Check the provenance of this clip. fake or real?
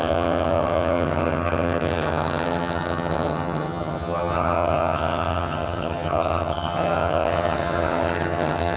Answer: fake